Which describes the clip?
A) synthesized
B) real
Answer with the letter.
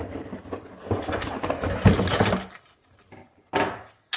B